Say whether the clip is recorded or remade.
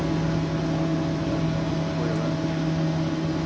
recorded